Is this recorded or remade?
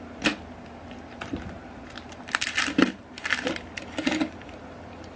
recorded